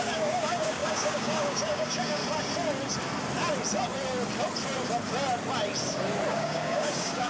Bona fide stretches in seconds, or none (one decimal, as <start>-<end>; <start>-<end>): 2.2-6.3